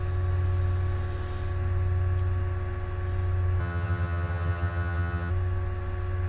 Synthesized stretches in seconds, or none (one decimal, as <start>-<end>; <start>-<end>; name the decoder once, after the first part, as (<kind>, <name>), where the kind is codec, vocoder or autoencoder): 3.6-5.3 (vocoder, HiFi-GAN)